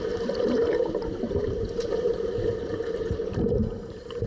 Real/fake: fake